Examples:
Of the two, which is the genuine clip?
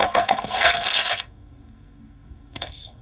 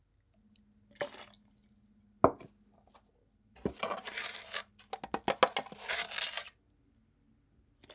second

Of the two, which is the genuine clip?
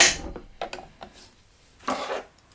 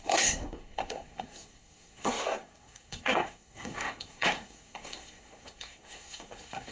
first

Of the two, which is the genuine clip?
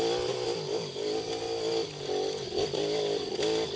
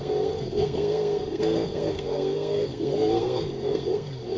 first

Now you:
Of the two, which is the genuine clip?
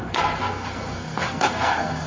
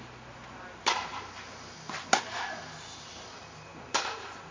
second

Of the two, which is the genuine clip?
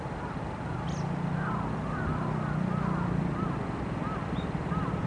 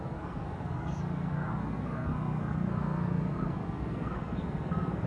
first